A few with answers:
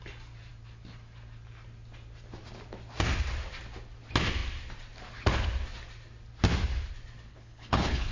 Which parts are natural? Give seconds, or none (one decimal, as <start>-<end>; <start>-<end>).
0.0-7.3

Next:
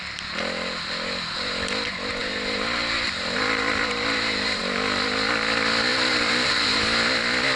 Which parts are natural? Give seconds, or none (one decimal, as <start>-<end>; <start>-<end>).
0.0-2.2; 4.6-5.9; 6.8-7.6

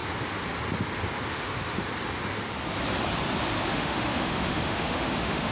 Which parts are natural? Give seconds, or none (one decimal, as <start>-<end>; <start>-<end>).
0.0-1.3; 1.8-3.7

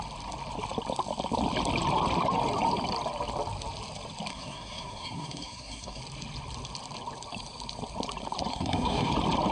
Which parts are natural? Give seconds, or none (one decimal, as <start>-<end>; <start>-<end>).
0.0-4.3; 6.0-8.5; 9.1-9.5

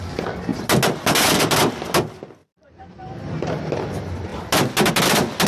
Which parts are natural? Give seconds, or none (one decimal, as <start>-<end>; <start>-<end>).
0.0-2.4; 3.7-5.5